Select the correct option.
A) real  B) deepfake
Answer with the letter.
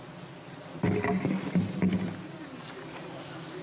A